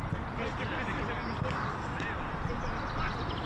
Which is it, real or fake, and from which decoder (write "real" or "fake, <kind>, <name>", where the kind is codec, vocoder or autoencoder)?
real